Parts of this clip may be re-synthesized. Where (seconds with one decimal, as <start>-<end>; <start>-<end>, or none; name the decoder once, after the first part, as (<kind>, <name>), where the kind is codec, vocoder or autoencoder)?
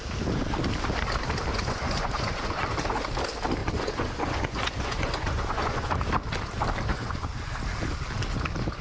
1.5-2.6 (vocoder, Vocos); 3.6-5.9; 6.9-7.5